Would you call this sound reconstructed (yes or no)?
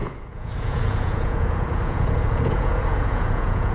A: yes